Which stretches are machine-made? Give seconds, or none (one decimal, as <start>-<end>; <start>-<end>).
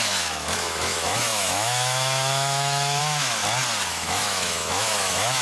0.0-3.4; 3.9-5.4